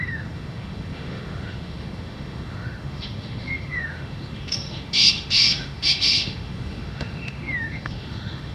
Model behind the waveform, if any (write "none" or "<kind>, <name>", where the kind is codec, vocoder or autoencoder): autoencoder, DAC-VAE